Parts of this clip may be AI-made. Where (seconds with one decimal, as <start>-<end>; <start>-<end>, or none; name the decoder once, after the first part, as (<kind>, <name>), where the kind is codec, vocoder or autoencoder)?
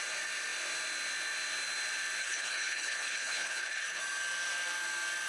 2.2-4.0 (codec, HILCodec)